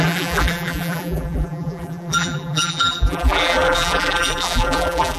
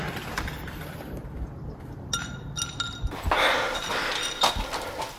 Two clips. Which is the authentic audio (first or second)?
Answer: second